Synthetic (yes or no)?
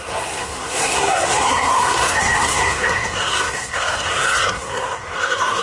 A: yes